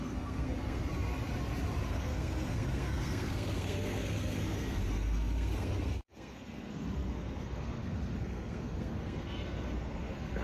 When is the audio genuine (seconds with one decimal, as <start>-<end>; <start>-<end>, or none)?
0.9-1.9